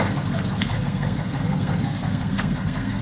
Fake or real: fake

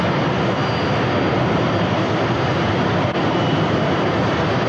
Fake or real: real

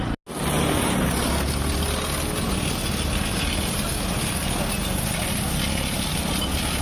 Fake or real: real